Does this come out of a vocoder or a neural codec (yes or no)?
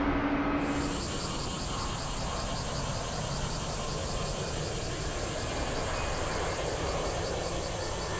no